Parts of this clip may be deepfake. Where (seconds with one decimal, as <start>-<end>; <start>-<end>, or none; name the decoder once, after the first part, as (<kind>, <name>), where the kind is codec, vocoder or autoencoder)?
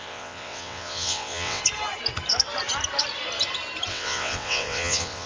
0.0-1.6 (vocoder, WaveNeXt); 3.9-5.3